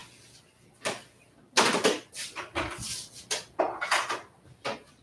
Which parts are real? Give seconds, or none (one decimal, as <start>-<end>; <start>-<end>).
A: 0.0-5.0